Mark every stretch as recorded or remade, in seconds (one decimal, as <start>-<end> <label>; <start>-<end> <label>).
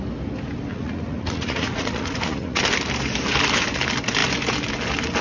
0.0-0.7 recorded; 0.7-2.6 remade; 2.6-5.2 recorded